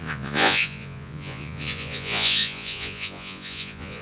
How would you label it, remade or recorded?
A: remade